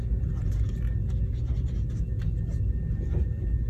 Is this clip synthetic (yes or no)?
no